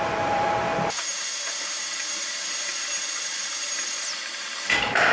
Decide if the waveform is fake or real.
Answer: fake